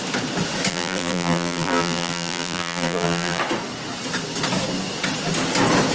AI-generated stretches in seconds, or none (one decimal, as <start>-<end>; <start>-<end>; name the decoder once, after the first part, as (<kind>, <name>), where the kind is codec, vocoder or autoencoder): 0.7-3.4 (vocoder, BigVGAN v2)